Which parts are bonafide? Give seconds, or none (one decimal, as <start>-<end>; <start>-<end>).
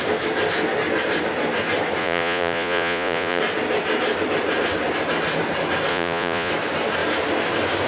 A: 0.0-2.0; 3.4-5.9; 6.5-7.9